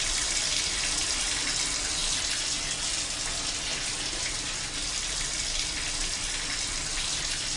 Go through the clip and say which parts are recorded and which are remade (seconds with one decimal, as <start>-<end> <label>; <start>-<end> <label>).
0.0-7.6 recorded